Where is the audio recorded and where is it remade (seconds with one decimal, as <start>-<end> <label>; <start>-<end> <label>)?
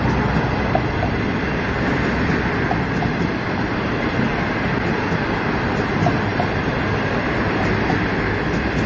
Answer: 0.0-6.3 recorded; 6.3-6.8 remade; 6.8-8.9 recorded